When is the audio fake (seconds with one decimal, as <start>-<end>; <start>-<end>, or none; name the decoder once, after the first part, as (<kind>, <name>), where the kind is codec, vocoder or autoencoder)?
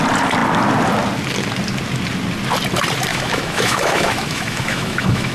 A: 3.1-5.3 (autoencoder, DAC-VAE)